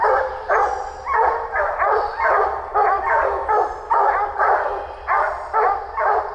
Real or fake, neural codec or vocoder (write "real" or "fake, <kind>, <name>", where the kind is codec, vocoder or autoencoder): real